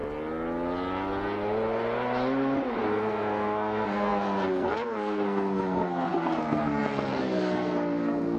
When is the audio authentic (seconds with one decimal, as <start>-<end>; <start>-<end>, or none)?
0.0-2.9